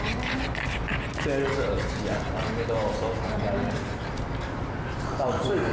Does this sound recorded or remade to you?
recorded